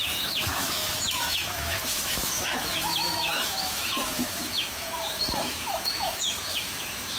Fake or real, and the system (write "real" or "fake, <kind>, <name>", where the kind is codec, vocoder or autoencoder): fake, autoencoder, DAC-VAE